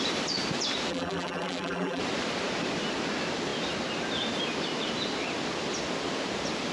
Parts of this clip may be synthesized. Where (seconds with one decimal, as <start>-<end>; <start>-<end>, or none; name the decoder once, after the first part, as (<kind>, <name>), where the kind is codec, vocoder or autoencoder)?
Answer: 0.9-2.0 (vocoder, BigVGAN v2)